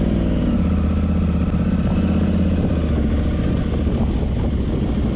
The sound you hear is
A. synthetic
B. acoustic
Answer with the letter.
B